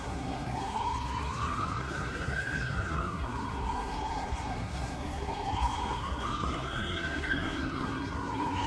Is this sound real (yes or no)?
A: no